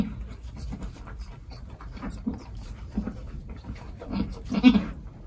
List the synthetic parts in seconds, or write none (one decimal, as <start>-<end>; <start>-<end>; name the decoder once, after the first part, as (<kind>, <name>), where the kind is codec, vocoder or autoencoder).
1.4-4.6 (vocoder, BigVGAN v2)